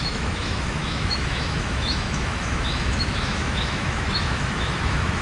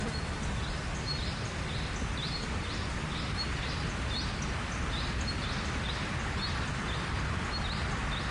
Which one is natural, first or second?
second